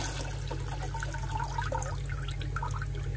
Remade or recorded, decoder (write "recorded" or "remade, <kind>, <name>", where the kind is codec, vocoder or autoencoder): recorded